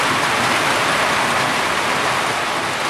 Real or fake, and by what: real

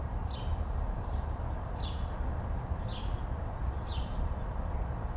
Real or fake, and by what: real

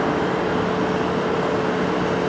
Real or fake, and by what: real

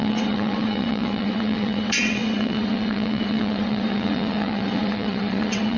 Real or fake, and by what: fake, vocoder, WaveNeXt